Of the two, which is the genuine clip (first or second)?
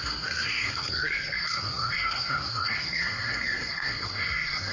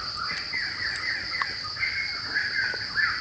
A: second